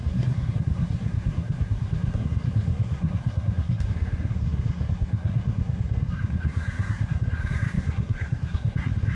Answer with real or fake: fake